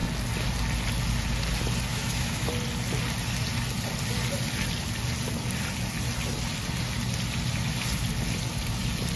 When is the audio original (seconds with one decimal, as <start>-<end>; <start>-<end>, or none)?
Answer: 0.0-1.9; 2.5-9.2